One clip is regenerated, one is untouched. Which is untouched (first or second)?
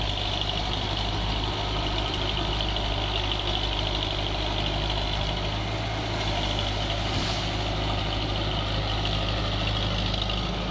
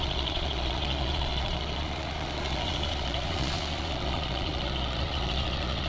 first